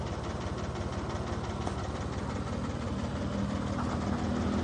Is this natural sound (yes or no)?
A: yes